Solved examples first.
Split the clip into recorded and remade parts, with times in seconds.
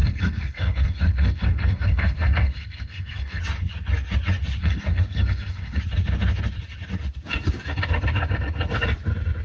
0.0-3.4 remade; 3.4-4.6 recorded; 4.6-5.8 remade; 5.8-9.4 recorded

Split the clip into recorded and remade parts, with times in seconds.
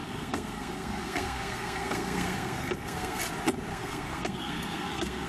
0.0-3.2 remade; 3.2-3.7 recorded; 3.7-5.3 remade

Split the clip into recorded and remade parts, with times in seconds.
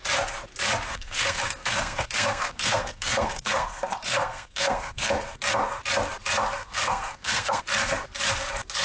0.0-0.9 recorded; 0.9-5.1 remade; 5.1-6.6 recorded; 6.6-7.6 remade; 7.6-8.8 recorded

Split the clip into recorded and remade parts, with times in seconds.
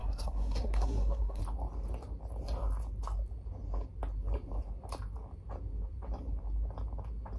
0.0-1.4 remade; 1.4-7.4 recorded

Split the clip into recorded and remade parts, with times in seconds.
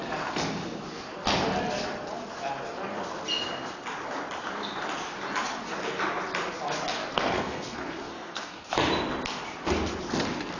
0.0-7.1 recorded; 7.1-8.7 remade; 8.7-10.6 recorded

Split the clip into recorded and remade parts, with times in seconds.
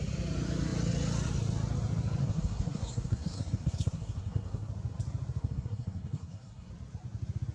0.0-2.2 recorded; 2.2-4.7 remade; 4.7-5.4 recorded; 5.4-6.7 remade; 6.7-7.5 recorded